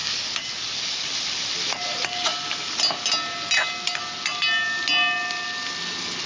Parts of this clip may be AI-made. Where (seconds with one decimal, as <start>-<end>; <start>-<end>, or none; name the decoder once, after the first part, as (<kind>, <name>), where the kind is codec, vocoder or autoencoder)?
none